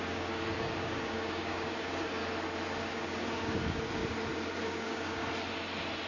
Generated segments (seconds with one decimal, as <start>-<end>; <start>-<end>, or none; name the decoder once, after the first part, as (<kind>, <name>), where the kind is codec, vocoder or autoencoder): 0.0-2.2 (codec, DAC); 2.8-4.0; 4.6-5.2